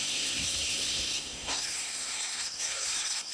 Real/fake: fake